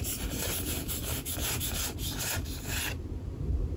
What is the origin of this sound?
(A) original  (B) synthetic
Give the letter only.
A